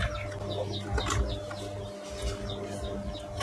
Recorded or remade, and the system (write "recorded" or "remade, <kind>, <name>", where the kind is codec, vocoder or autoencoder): recorded